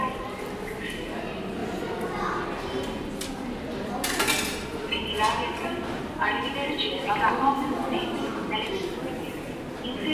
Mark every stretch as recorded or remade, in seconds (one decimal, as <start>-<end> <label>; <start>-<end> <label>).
0.0-10.1 recorded